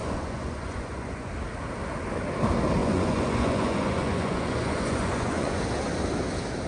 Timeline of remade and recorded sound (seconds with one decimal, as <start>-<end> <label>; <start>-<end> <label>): 0.0-1.3 remade; 1.3-2.8 recorded; 2.8-5.6 remade; 5.6-6.7 recorded